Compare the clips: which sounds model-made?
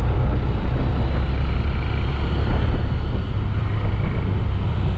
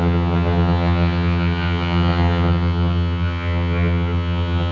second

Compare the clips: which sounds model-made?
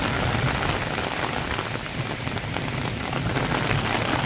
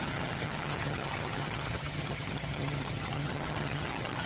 second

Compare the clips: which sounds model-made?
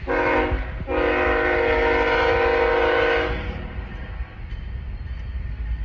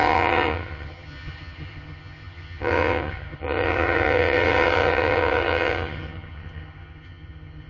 second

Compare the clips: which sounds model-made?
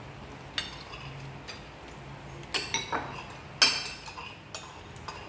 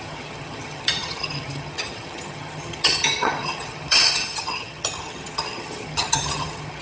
second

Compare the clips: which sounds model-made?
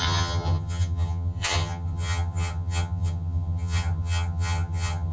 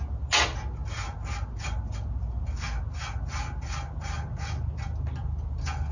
first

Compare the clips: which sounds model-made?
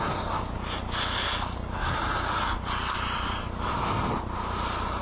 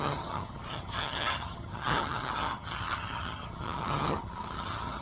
second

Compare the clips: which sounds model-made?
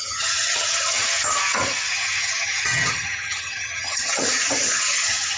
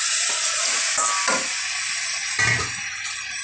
first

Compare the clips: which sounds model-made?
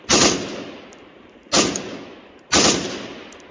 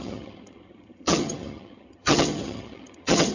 second